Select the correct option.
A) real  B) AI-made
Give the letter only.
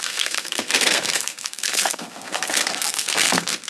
B